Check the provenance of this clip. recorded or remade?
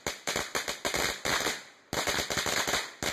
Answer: recorded